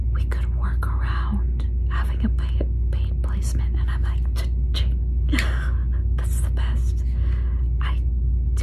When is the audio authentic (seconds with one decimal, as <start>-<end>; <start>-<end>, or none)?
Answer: 0.0-8.6